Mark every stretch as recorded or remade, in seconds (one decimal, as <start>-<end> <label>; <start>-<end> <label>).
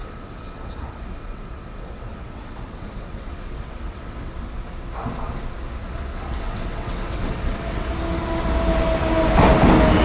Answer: 0.0-4.3 remade; 4.3-5.8 recorded; 5.8-7.9 remade; 7.9-10.0 recorded